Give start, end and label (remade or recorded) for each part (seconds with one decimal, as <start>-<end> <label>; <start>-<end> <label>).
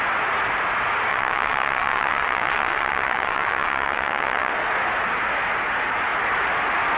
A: 0.0-1.1 recorded; 1.1-4.5 remade; 4.5-7.0 recorded